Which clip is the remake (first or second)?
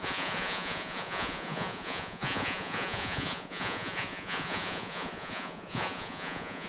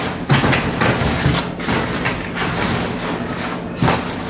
first